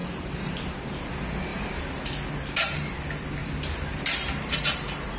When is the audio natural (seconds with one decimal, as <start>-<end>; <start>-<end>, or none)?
0.6-1.5; 2.0-3.4